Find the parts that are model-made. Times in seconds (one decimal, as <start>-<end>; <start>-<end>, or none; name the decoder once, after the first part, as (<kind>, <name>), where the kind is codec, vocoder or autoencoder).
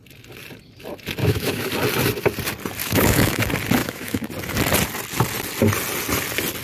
1.2-1.7 (autoencoder, DAC-VAE); 2.8-3.4; 3.8-4.3